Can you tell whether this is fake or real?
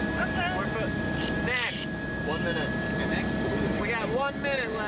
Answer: real